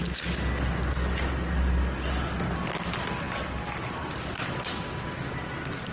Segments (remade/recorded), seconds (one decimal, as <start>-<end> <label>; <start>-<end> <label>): 0.0-4.7 recorded; 4.7-5.3 remade; 5.3-5.9 recorded